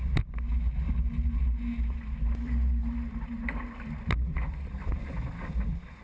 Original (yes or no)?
yes